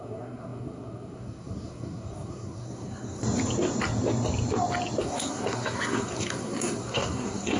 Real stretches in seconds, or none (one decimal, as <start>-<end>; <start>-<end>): 3.2-5.0